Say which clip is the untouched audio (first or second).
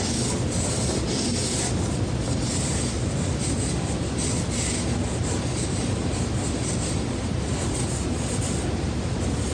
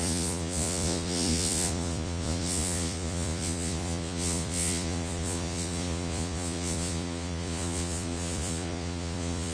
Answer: first